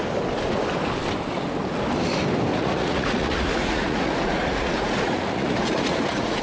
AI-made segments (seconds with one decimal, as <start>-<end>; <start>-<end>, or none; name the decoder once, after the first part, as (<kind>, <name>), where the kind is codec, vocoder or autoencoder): 2.5-6.4 (vocoder, Vocos)